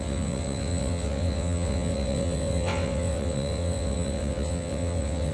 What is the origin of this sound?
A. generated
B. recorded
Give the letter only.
A